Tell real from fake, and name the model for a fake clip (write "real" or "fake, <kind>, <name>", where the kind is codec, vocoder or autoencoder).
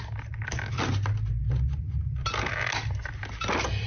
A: real